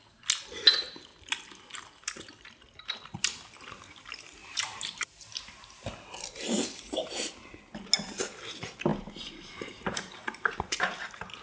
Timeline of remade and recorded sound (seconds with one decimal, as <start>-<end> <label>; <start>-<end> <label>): 0.0-4.4 recorded; 4.4-5.5 remade; 5.5-8.9 recorded; 8.9-11.4 remade